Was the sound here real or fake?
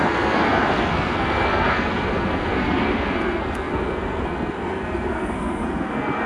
fake